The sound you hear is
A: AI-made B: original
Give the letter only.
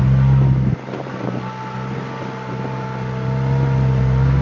B